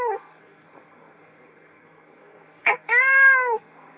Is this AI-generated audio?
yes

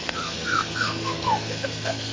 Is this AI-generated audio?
yes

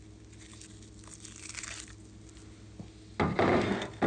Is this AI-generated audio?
no